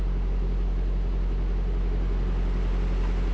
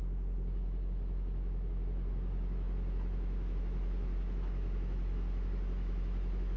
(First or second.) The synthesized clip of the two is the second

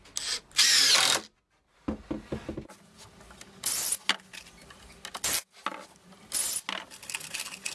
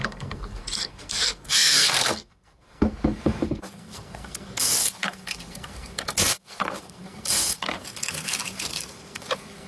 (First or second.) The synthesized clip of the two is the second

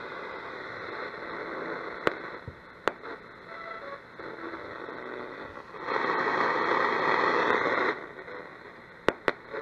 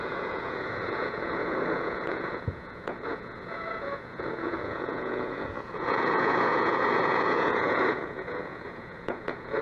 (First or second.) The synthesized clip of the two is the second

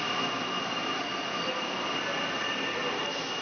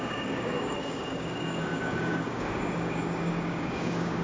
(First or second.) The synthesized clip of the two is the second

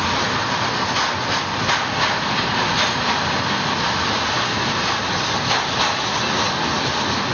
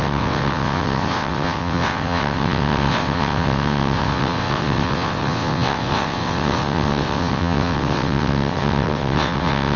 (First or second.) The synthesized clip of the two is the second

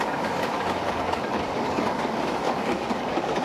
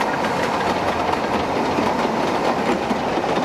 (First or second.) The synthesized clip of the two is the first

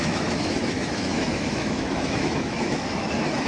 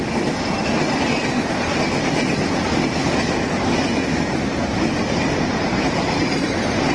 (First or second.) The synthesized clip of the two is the first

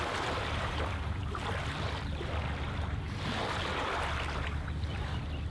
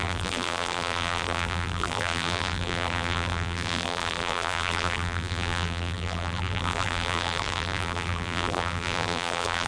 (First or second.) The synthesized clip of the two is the second